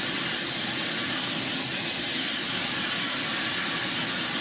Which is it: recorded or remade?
recorded